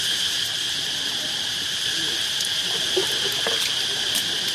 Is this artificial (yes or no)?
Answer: no